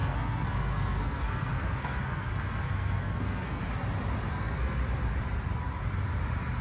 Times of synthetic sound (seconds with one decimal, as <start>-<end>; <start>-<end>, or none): 0.0-3.6; 4.3-4.8